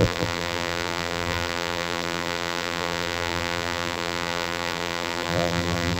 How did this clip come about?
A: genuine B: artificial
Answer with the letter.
B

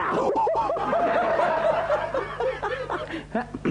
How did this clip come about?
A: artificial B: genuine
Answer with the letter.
B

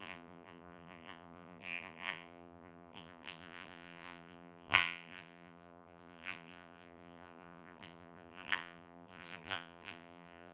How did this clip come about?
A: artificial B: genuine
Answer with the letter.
A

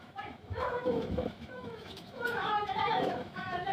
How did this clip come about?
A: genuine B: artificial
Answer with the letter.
B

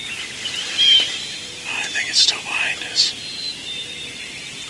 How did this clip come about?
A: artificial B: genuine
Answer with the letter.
B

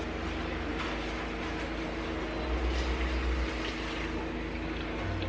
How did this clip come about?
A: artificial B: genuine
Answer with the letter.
B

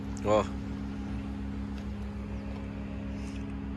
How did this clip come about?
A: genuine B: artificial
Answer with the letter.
A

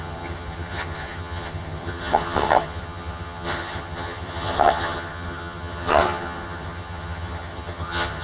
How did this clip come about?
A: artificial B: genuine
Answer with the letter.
A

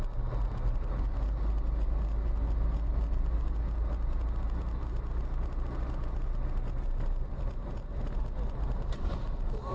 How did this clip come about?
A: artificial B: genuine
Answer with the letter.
B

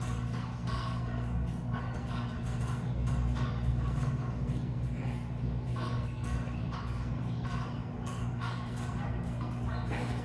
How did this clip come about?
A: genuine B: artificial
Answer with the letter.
B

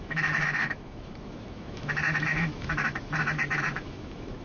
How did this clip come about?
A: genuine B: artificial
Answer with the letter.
B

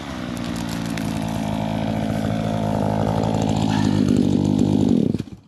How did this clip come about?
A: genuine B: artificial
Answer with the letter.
A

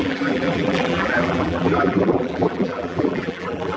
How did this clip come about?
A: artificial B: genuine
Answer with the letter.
A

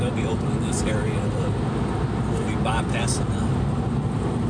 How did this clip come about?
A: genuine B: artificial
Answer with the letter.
A